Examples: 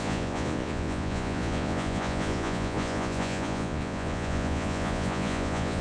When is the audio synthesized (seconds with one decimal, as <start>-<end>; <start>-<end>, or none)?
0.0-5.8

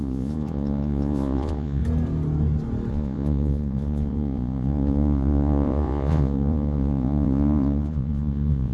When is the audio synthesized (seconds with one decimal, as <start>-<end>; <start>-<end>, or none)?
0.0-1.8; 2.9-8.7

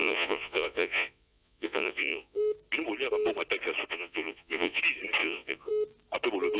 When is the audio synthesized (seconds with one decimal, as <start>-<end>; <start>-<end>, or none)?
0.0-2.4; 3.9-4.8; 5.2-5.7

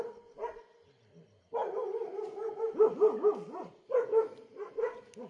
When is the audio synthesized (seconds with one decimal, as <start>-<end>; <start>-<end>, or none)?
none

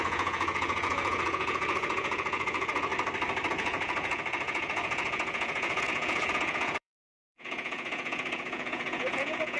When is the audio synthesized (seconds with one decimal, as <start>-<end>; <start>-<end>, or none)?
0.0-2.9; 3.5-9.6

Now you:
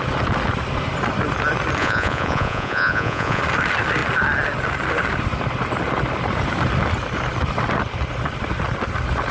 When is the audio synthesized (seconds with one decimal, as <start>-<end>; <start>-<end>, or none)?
1.8-3.4

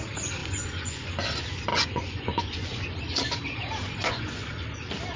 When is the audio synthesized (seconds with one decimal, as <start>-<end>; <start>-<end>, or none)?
0.4-1.1; 1.7-3.0; 4.0-4.5

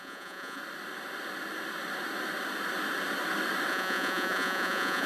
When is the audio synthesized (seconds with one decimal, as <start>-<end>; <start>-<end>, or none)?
0.0-0.6; 3.7-5.1